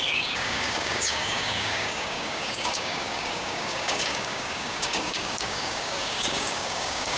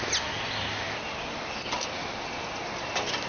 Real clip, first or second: second